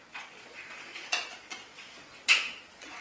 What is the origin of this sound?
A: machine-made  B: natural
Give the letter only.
A